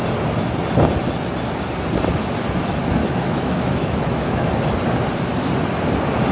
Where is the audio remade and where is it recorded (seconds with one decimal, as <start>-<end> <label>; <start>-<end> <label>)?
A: 0.0-3.0 recorded; 3.0-4.5 remade; 4.5-6.3 recorded